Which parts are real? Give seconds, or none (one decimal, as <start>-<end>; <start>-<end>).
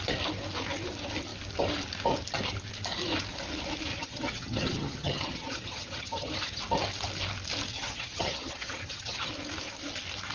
0.0-3.9; 6.6-7.7; 9.3-10.3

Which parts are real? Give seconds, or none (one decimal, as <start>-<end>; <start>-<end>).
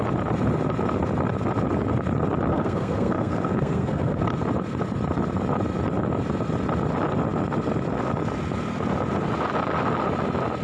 0.0-2.5; 4.2-10.6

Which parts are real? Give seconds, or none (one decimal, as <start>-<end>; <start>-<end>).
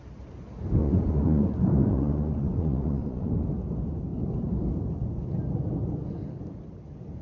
0.0-0.8; 3.3-7.2